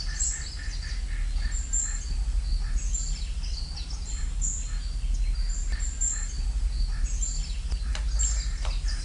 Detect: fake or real real